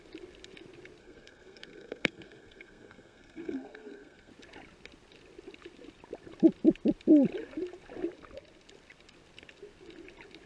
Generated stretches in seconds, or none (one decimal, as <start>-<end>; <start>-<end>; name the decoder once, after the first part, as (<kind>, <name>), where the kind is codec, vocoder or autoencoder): 1.0-4.3 (codec, SNAC)